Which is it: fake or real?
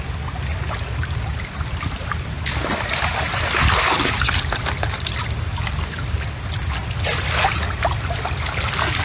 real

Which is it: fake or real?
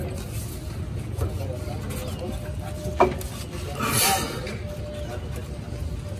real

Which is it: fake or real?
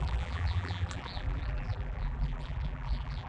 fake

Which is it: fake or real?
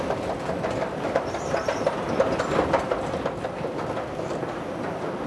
real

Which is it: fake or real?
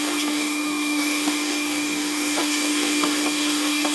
fake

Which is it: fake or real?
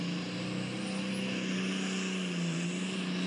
real